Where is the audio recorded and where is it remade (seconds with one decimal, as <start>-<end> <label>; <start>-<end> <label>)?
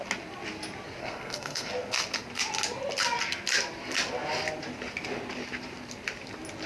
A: 0.0-1.0 recorded; 1.0-1.7 remade; 1.7-6.7 recorded